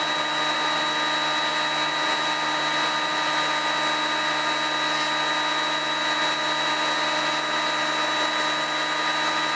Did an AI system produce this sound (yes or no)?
no